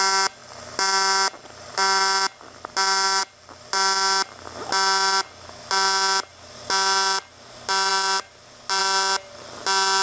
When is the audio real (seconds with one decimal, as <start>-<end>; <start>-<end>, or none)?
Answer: 0.0-10.0